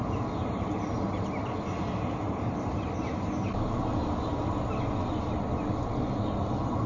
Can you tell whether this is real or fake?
real